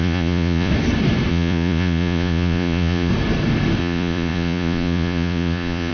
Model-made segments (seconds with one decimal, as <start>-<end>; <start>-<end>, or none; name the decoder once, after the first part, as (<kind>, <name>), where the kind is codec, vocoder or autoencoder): 0.0-0.7 (vocoder, Vocos); 1.3-3.1; 3.8-5.9